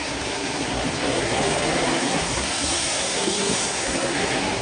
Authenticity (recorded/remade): remade